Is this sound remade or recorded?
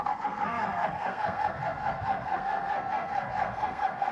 remade